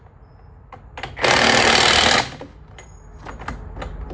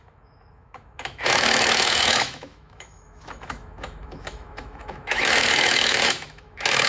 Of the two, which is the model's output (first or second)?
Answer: second